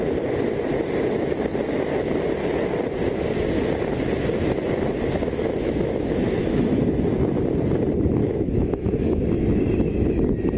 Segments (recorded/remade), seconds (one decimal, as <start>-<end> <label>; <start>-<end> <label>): 0.0-5.4 recorded; 5.4-6.8 remade; 6.8-8.2 recorded; 8.2-9.2 remade; 9.2-10.6 recorded